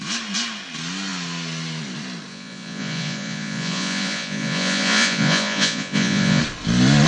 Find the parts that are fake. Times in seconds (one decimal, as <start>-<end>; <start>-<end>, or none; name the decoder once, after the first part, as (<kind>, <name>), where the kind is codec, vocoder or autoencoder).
2.3-6.4 (vocoder, Vocos)